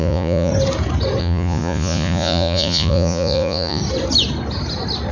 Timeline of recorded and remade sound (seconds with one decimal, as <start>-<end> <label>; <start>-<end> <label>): 0.0-0.5 remade; 0.5-1.2 recorded; 1.2-3.8 remade; 3.8-5.1 recorded